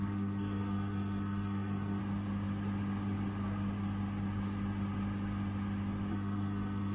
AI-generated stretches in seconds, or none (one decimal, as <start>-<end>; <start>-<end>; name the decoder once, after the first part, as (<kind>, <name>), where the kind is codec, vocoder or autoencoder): 0.0-2.0 (codec, SNAC); 6.1-6.9